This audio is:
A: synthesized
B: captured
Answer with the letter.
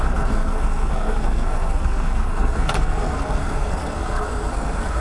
A